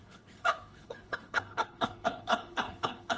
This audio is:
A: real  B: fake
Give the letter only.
B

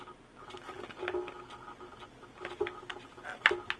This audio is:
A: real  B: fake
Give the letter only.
A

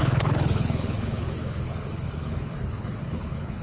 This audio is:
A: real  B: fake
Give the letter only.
B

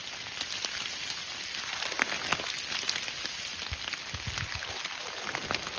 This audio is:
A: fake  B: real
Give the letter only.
B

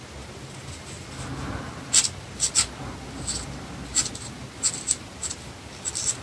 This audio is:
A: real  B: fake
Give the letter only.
A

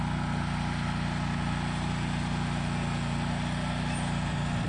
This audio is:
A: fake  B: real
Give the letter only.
B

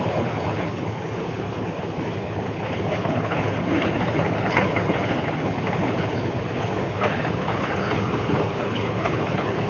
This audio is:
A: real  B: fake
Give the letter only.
B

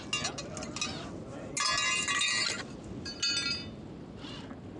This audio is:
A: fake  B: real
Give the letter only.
B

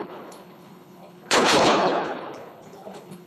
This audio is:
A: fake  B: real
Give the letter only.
A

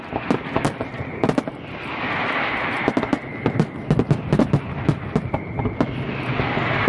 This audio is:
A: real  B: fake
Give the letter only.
A